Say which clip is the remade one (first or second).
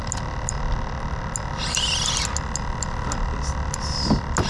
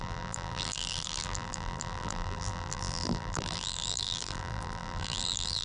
second